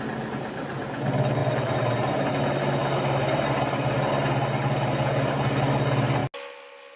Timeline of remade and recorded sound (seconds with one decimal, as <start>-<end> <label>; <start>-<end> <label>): 0.0-1.4 recorded; 1.4-2.3 remade; 2.3-2.8 recorded; 2.8-4.1 remade; 4.1-7.0 recorded